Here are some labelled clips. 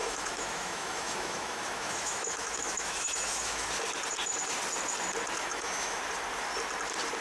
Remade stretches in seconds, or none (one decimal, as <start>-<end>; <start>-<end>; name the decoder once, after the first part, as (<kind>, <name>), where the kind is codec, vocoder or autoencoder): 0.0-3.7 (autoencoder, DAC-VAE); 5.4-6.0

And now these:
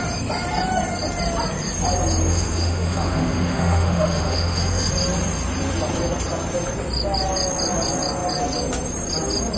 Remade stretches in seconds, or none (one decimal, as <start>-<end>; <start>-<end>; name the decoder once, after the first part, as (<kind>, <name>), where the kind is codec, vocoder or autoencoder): 2.3-4.9 (autoencoder, DAC-VAE)

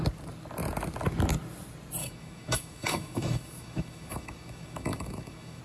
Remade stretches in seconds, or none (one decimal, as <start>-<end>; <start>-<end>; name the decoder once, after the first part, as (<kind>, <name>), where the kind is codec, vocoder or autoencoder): 2.0-5.6 (autoencoder, DAC-VAE)